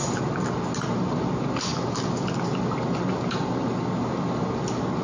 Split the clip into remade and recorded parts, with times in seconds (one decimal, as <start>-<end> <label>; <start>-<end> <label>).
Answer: 0.0-5.0 recorded